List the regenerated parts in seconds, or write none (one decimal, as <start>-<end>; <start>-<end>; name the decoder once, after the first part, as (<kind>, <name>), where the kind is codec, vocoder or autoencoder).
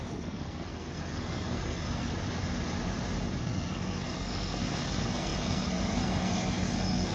0.0-2.1 (codec, SNAC); 3.4-7.1